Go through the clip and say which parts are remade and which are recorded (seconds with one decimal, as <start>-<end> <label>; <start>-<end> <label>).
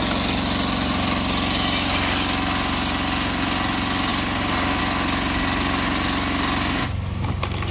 0.0-4.1 recorded; 4.1-4.8 remade; 4.8-7.7 recorded